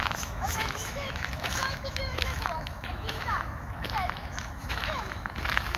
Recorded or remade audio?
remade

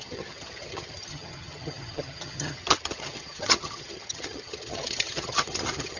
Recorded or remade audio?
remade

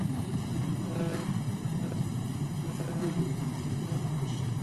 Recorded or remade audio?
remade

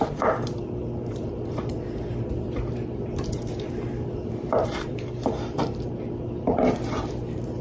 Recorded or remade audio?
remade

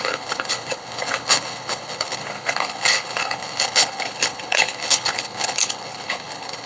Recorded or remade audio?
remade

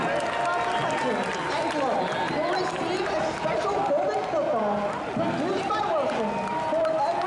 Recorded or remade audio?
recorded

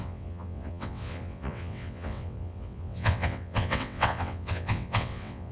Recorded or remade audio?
remade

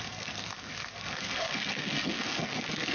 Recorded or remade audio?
remade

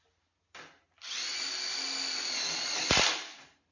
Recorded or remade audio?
recorded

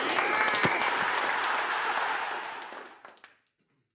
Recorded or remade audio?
recorded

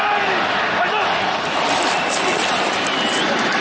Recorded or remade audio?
recorded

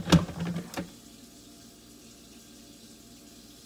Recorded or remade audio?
recorded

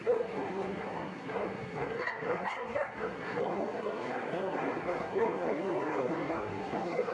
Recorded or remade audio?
remade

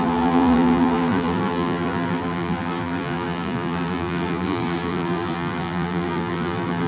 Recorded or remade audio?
remade